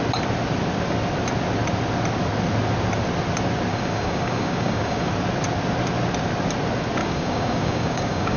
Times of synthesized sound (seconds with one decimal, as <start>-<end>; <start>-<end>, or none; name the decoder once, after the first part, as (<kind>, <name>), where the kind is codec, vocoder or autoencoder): 3.7-5.1 (codec, DAC); 7.0-8.4